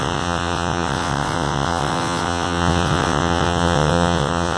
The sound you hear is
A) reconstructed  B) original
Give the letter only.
A